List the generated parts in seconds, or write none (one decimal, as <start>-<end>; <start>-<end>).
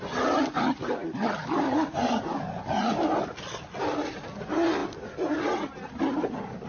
none